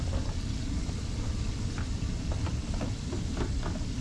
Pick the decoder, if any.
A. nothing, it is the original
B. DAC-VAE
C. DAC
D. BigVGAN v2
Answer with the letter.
D